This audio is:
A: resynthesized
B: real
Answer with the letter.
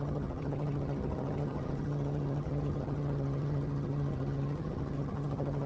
A